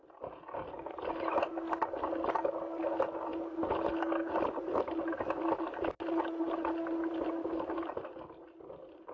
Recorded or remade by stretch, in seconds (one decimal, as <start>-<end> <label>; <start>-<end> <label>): 0.0-7.4 recorded; 7.4-7.9 remade; 7.9-9.1 recorded